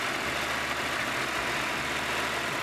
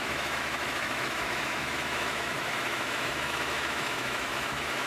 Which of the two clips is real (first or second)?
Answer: first